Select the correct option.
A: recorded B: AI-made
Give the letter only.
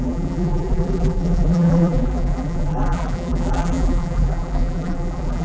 B